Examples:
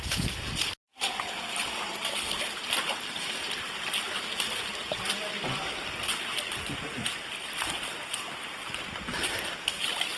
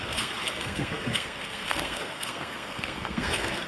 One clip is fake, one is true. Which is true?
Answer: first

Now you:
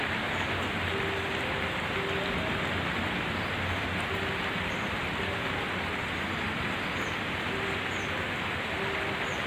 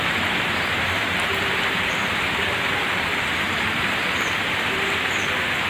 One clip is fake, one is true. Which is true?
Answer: first